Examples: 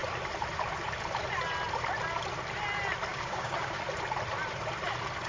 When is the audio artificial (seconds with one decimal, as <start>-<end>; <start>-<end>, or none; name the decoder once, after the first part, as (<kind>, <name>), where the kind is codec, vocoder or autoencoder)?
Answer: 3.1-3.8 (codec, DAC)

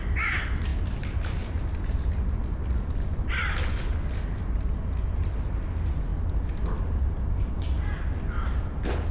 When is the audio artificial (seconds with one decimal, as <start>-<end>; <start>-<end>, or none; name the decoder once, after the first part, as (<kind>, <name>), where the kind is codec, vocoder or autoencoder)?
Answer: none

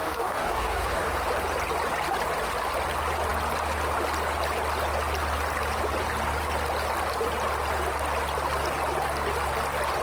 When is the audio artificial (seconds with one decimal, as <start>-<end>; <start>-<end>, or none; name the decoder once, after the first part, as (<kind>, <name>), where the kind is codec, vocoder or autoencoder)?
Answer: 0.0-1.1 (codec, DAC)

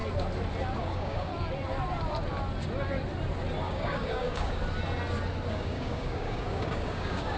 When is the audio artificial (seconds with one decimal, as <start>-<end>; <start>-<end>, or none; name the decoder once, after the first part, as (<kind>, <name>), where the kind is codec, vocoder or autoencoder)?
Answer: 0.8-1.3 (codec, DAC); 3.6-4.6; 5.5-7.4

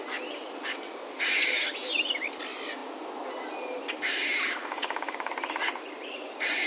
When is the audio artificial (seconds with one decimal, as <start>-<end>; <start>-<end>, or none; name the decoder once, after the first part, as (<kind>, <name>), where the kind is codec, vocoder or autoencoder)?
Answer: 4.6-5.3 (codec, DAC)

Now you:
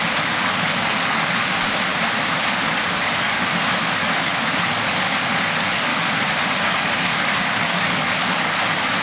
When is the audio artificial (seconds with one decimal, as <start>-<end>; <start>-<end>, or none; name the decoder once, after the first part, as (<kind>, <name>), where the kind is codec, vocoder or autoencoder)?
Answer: 0.0-1.9 (codec, DAC); 2.5-4.3; 4.8-5.9; 6.7-9.0

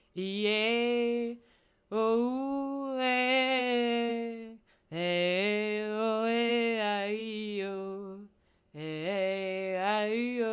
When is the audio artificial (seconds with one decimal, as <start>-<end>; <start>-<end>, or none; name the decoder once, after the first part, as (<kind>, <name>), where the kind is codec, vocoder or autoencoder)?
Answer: 4.1-6.5 (codec, DAC); 7.2-8.4